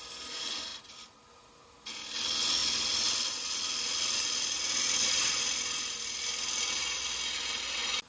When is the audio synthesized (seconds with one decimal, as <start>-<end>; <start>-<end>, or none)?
none